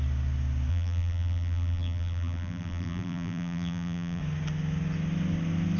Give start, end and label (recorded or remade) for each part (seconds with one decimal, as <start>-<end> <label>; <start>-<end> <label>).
0.0-0.7 recorded; 0.7-4.2 remade; 4.2-5.8 recorded